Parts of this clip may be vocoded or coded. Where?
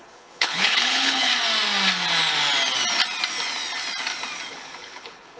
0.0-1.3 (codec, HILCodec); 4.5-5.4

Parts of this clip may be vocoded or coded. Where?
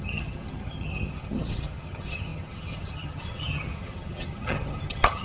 0.0-5.2 (vocoder, HiFi-GAN)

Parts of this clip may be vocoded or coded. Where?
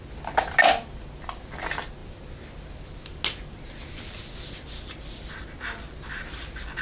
none